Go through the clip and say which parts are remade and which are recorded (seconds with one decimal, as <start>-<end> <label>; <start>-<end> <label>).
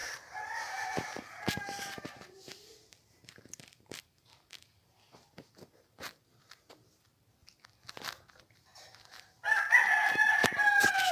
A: 0.0-7.4 remade; 7.4-8.4 recorded; 8.4-11.1 remade